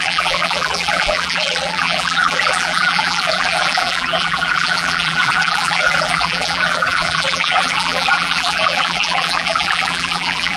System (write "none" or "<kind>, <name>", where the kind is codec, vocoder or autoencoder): vocoder, BigVGAN v2